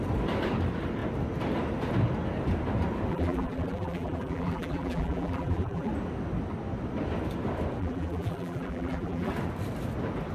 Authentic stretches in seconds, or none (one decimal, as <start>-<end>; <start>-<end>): 0.0-3.1; 5.9-7.8; 9.3-10.3